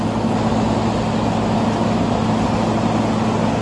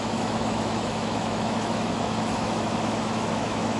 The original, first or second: first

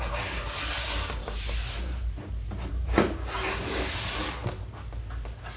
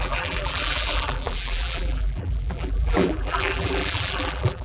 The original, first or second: first